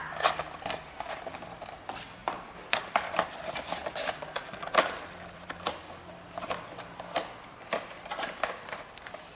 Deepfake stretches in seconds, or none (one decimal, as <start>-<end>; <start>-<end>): 2.2-3.4; 3.8-5.7